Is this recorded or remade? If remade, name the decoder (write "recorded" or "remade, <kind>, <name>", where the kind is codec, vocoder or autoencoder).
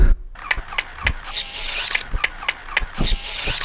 recorded